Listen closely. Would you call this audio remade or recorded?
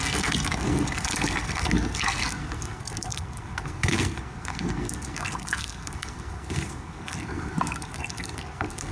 remade